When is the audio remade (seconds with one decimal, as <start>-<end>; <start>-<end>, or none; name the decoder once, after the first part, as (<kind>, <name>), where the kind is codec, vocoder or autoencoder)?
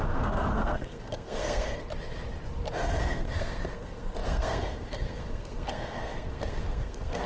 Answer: 0.0-1.7 (codec, SNAC); 3.0-7.3